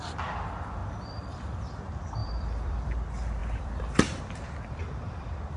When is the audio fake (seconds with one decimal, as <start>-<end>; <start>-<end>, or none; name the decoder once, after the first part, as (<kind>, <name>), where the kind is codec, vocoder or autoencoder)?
0.8-1.8 (vocoder, BigVGAN v2); 2.2-2.9; 3.4-4.2; 4.8-5.6